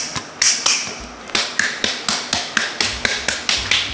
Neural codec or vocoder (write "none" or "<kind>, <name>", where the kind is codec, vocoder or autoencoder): none